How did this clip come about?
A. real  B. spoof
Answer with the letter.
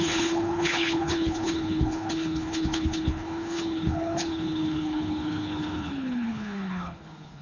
B